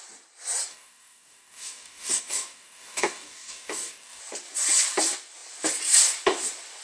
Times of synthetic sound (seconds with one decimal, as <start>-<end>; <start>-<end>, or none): 0.7-4.2